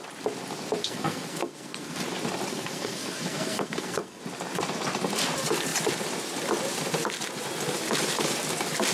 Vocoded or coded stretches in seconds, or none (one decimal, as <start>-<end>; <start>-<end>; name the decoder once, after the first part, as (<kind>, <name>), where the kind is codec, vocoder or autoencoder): 0.8-2.0 (codec, SNAC); 2.5-4.2